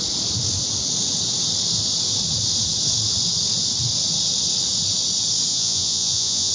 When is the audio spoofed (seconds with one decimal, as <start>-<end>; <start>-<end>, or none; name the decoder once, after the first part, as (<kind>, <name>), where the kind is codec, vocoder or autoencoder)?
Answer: 5.5-6.5 (vocoder, Vocos)